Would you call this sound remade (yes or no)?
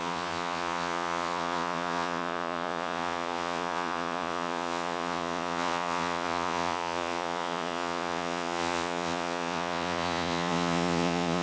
yes